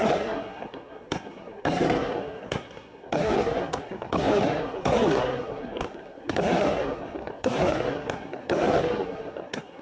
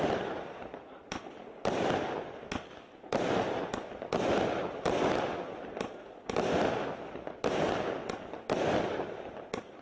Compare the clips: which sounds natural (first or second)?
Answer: second